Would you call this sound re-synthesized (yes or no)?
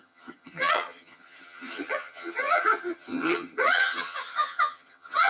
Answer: yes